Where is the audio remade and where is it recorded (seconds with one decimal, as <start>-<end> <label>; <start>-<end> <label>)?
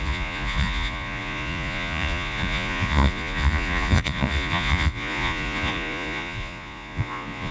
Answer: 0.0-7.5 remade